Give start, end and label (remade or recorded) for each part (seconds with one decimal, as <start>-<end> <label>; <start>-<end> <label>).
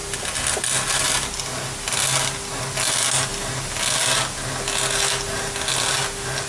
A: 0.0-6.5 recorded